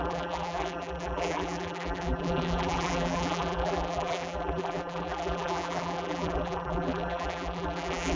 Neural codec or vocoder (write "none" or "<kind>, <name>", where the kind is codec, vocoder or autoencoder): vocoder, BigVGAN v2